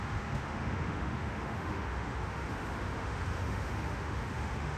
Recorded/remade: remade